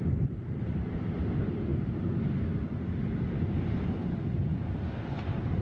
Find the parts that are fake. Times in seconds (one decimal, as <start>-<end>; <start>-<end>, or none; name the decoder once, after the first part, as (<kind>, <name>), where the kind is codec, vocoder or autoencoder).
none